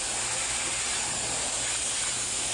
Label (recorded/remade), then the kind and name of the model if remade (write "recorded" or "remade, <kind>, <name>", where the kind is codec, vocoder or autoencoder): recorded